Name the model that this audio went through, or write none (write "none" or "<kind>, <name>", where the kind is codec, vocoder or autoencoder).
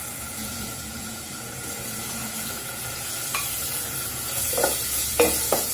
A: vocoder, Vocos